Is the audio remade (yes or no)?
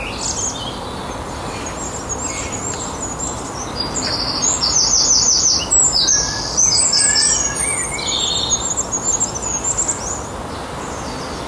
no